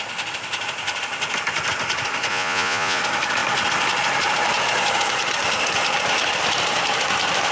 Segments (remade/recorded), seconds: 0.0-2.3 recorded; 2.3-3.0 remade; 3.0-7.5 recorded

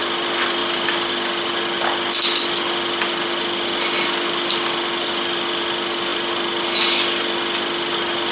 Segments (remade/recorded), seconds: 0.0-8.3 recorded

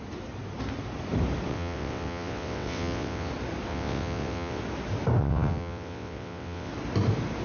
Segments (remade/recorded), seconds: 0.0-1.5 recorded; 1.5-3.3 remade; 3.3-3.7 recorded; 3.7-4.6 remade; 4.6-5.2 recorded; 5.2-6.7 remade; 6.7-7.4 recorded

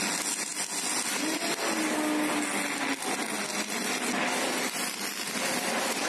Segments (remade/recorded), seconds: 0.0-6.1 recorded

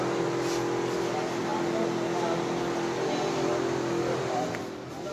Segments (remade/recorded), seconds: 0.0-5.1 recorded

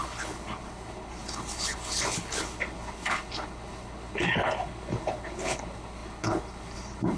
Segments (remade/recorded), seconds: 0.0-7.2 remade

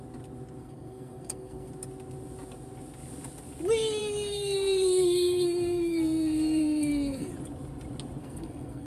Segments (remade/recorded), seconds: 0.0-0.6 recorded; 0.6-1.7 remade; 1.7-4.0 recorded; 4.0-7.3 remade; 7.3-8.2 recorded; 8.2-8.9 remade

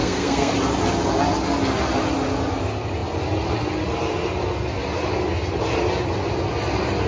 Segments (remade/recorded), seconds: 0.0-0.5 remade; 0.5-7.1 recorded